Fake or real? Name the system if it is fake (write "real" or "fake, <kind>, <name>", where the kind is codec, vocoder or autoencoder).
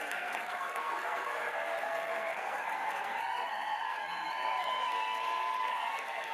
fake, codec, SNAC